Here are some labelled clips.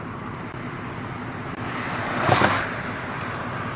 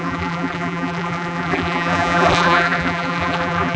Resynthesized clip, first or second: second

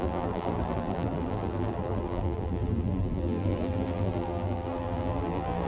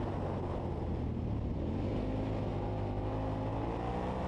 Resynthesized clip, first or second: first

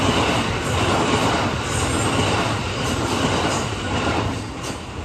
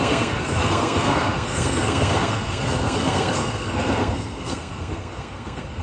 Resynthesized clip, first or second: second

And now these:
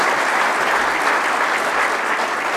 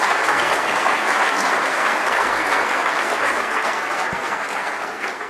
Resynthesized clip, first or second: second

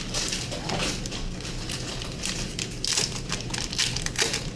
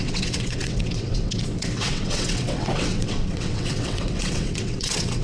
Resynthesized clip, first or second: second